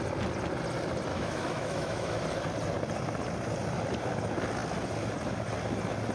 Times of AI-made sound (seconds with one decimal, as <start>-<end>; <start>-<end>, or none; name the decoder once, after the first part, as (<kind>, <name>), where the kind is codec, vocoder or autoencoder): 1.1-2.2 (autoencoder, DAC-VAE)